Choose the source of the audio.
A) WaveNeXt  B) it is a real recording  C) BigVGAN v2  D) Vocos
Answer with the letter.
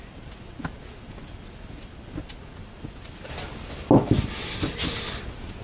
B